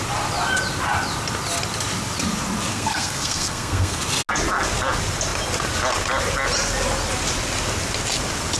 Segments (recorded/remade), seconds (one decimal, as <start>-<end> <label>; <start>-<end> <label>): 0.0-2.7 recorded; 2.7-4.0 remade; 4.0-8.6 recorded